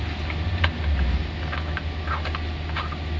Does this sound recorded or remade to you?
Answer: recorded